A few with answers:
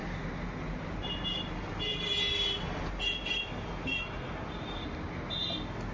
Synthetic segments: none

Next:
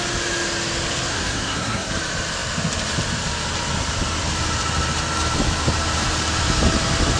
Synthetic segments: 1.1-1.9 (codec, SNAC)

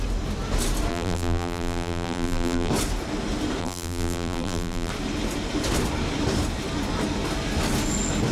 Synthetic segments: 0.9-2.7 (vocoder, BigVGAN v2); 3.6-4.9

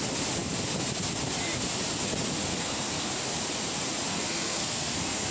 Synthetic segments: 2.5-3.1 (codec, SNAC); 4.1-5.3

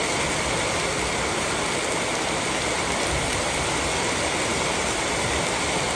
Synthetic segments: none

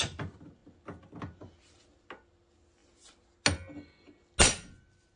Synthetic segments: none